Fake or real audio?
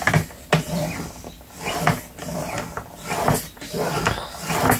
real